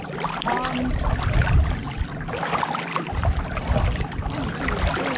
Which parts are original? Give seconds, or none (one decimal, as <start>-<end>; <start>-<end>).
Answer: 0.0-5.2